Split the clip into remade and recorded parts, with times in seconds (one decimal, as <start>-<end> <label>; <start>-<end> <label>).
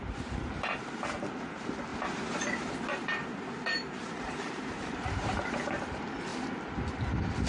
0.0-6.3 remade; 6.3-7.5 recorded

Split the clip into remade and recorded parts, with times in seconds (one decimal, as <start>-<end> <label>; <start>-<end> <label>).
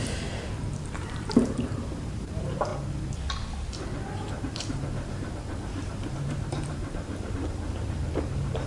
0.0-2.7 remade; 2.7-4.3 recorded; 4.3-8.7 remade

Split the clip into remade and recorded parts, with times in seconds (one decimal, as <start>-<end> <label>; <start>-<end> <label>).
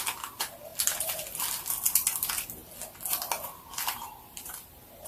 0.0-3.9 recorded; 3.9-5.1 remade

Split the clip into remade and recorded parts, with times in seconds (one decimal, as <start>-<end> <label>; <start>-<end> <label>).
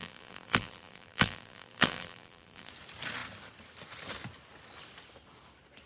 0.0-2.7 remade; 2.7-5.9 recorded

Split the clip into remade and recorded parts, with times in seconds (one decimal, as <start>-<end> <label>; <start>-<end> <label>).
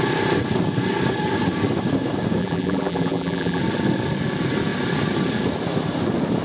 0.0-2.4 recorded; 2.4-3.6 remade; 3.6-6.4 recorded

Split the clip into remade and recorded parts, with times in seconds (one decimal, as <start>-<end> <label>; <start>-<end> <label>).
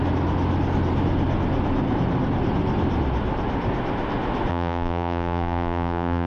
0.0-4.5 recorded; 4.5-6.3 remade